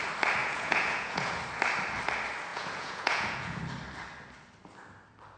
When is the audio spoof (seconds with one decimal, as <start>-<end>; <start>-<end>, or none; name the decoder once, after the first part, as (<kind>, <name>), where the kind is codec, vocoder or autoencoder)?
0.4-1.4 (vocoder, Vocos); 2.5-3.6